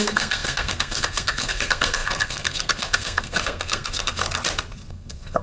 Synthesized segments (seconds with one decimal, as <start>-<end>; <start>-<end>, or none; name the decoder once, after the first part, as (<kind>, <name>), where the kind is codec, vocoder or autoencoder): 0.0-4.2 (codec, SNAC); 4.9-5.4